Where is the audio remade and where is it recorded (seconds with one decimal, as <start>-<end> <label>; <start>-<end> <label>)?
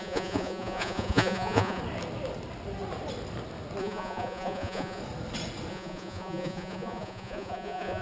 0.0-1.8 remade; 1.8-3.8 recorded; 3.8-5.0 remade; 5.0-5.7 recorded; 5.7-8.0 remade